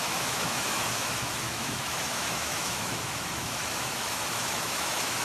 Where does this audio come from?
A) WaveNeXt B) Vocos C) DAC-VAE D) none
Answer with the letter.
C